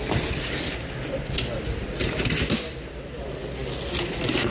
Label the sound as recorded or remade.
recorded